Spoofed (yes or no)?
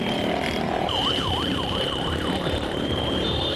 yes